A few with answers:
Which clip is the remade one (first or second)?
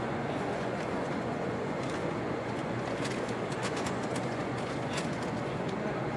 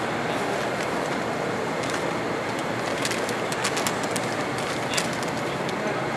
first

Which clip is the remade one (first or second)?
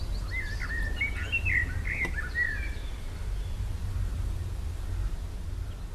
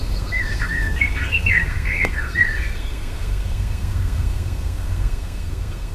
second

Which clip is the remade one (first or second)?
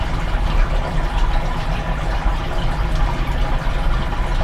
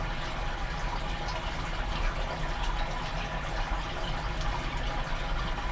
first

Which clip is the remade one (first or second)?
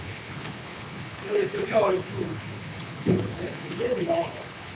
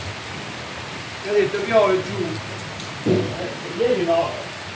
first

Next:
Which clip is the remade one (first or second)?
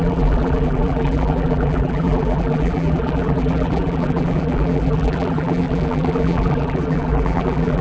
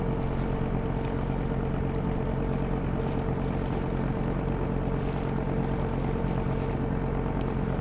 first